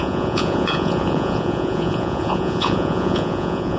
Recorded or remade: remade